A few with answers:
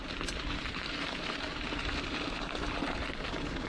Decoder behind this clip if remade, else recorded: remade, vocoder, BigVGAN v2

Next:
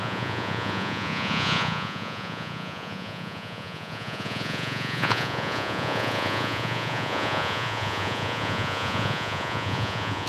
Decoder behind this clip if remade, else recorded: remade, vocoder, Vocos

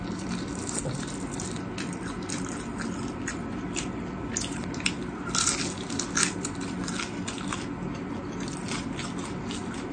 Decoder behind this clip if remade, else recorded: recorded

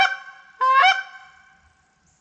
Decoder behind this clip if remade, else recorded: recorded